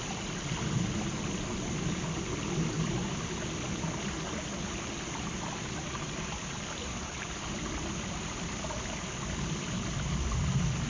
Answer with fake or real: real